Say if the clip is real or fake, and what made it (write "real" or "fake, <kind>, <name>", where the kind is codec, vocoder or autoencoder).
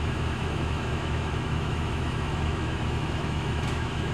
fake, autoencoder, DAC-VAE